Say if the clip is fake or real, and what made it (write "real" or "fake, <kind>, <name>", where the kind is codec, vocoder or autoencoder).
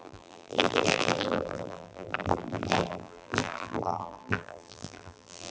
fake, vocoder, BigVGAN v2